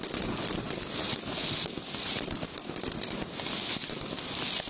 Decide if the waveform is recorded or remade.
recorded